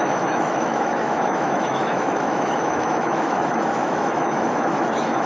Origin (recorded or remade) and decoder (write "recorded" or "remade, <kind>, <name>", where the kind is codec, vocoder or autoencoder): remade, autoencoder, DAC-VAE